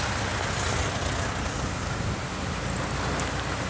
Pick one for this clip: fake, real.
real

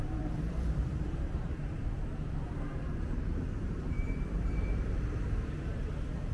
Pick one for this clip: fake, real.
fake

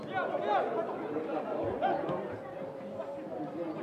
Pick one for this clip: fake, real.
real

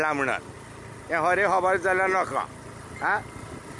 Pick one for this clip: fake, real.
real